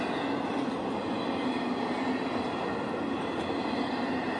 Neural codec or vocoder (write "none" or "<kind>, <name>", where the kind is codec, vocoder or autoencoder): none